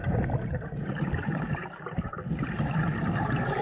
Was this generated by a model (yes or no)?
yes